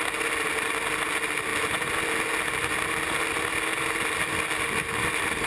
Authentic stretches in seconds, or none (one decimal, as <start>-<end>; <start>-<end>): 0.0-5.5